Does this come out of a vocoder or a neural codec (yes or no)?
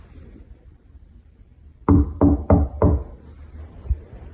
no